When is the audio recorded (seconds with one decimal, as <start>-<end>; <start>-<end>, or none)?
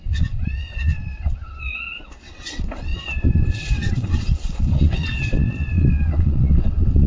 none